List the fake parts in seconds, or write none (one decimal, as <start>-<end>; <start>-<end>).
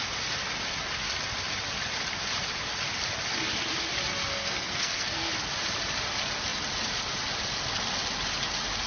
4.3-5.3